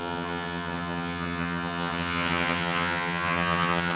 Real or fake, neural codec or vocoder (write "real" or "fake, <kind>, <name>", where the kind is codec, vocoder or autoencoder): fake, vocoder, HiFi-GAN